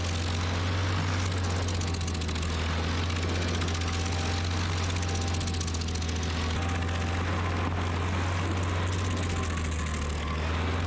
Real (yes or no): yes